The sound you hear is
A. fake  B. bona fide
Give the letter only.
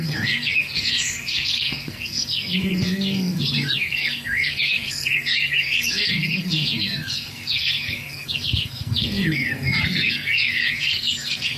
A